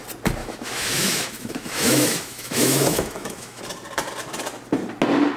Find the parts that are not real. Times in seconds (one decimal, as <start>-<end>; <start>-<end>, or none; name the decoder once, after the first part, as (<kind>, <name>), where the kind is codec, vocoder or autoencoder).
0.4-3.6 (autoencoder, DAC-VAE)